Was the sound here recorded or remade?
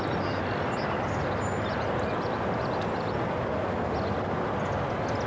recorded